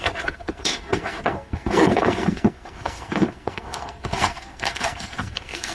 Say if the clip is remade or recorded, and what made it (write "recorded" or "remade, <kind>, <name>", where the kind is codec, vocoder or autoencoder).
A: remade, codec, SNAC